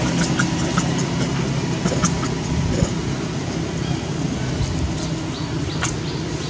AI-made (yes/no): no